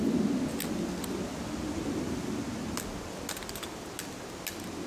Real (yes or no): yes